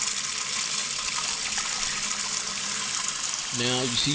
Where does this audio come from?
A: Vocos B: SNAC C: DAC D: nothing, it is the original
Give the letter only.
D